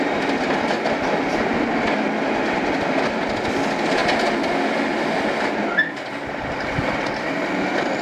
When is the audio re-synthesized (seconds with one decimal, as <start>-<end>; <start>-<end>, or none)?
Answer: none

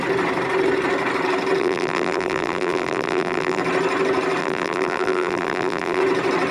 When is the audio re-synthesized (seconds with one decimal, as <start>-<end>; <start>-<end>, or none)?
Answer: 1.6-3.6; 4.4-6.0

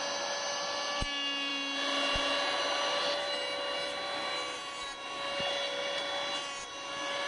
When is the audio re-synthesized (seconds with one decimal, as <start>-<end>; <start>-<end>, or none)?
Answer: none

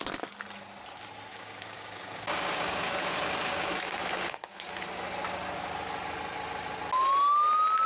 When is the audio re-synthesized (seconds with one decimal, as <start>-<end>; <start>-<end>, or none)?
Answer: 1.3-4.7

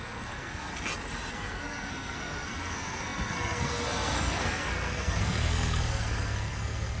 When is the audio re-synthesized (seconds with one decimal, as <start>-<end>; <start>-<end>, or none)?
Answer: 0.0-0.7; 1.3-7.0

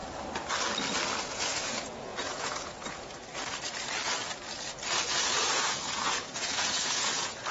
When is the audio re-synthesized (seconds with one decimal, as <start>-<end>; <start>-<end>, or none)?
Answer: 1.2-3.2; 5.1-7.5

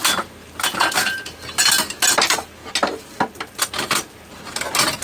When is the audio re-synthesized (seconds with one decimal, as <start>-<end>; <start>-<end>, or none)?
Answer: none